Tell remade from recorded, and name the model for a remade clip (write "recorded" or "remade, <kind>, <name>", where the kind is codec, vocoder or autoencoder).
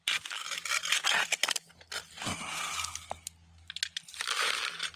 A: recorded